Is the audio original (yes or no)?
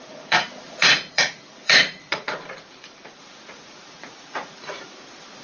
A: no